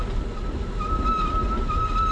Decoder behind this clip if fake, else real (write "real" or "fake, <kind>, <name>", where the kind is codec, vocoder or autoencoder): real